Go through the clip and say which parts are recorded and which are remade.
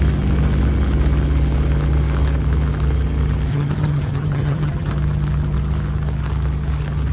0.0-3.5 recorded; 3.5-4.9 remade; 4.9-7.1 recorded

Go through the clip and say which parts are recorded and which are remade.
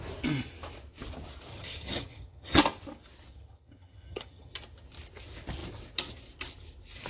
0.0-1.5 recorded; 1.5-2.6 remade; 2.6-3.3 recorded; 3.3-4.5 remade; 4.5-7.1 recorded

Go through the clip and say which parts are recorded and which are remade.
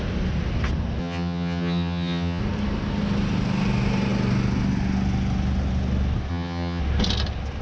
0.0-1.0 recorded; 1.0-2.4 remade; 2.4-6.3 recorded; 6.3-6.8 remade; 6.8-7.6 recorded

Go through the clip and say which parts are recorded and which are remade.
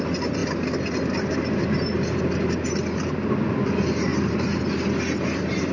0.0-5.7 recorded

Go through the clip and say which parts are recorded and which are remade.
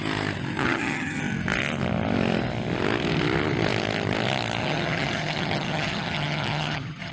0.0-0.6 recorded; 0.6-1.2 remade; 1.2-4.6 recorded; 4.6-7.1 remade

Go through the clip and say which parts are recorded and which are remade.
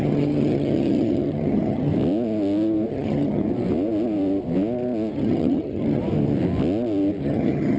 0.0-1.9 remade; 1.9-2.9 recorded; 2.9-3.4 remade; 3.4-5.1 recorded; 5.1-6.0 remade; 6.0-7.2 recorded; 7.2-7.8 remade